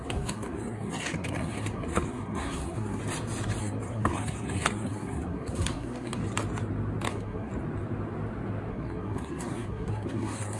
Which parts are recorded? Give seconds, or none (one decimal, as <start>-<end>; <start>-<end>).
3.0-3.6; 6.2-7.1; 7.5-8.7